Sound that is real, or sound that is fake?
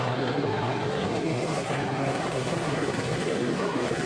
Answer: fake